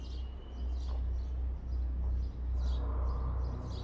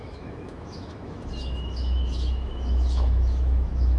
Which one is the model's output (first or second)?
second